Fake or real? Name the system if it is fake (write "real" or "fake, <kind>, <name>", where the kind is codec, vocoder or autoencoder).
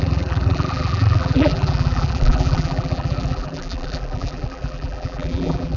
fake, vocoder, BigVGAN v2